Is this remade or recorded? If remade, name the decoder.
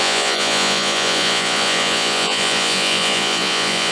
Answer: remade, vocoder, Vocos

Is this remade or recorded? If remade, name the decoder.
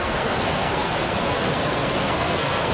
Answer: remade, codec, SNAC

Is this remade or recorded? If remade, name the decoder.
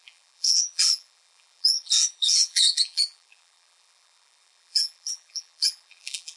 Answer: remade, vocoder, BigVGAN v2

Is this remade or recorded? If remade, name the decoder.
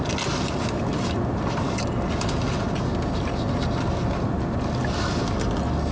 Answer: recorded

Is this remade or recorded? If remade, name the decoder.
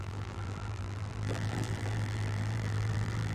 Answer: remade, vocoder, BigVGAN v2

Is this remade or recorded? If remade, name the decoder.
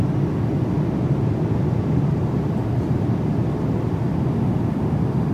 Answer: recorded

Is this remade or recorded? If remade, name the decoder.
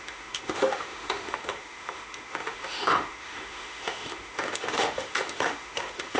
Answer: remade, autoencoder, DAC-VAE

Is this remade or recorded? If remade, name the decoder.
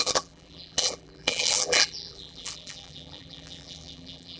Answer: remade, vocoder, BigVGAN v2